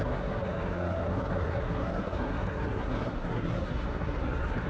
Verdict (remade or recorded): remade